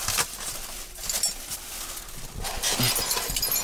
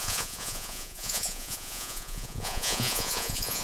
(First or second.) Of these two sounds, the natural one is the first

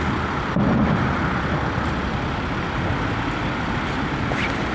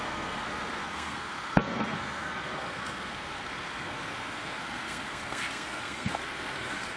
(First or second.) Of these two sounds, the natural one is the first